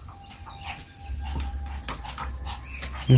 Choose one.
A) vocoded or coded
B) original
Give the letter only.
B